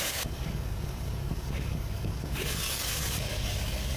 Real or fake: fake